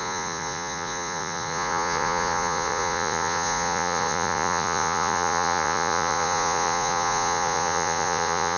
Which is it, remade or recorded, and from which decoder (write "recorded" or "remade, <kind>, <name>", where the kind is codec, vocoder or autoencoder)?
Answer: remade, vocoder, Vocos